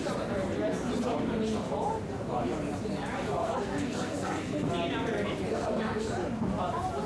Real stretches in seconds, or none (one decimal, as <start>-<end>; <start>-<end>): 0.0-3.4; 4.7-5.5; 6.1-7.1